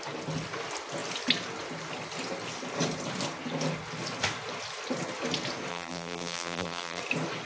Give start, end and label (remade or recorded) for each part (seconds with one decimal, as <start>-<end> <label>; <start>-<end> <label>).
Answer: 0.0-5.7 recorded; 5.7-7.0 remade; 7.0-7.5 recorded